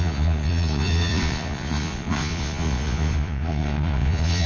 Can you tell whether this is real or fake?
fake